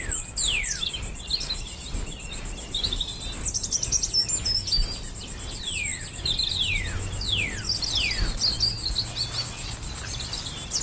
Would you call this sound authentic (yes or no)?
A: yes